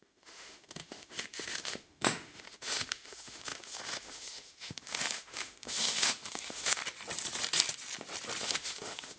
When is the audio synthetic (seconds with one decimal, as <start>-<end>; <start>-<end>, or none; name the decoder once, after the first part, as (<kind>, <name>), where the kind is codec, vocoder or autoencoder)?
0.0-6.8 (autoencoder, DAC-VAE); 8.4-9.2

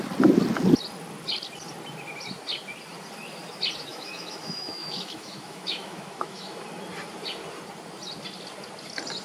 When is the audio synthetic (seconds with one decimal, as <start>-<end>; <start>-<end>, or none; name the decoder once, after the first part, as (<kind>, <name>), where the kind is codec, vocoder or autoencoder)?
3.9-6.6 (autoencoder, DAC-VAE)